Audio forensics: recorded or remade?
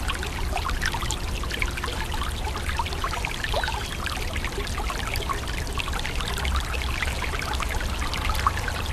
recorded